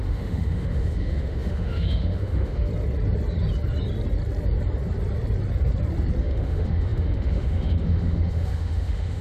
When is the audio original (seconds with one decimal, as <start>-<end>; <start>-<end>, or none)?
2.7-6.2